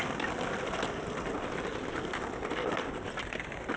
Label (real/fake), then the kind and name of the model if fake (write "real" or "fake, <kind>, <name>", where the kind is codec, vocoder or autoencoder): real